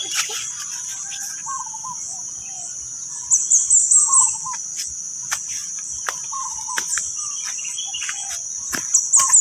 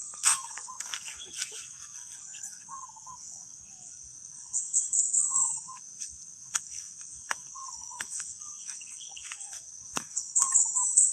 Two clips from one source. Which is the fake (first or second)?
second